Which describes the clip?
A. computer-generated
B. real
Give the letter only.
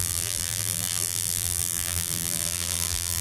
A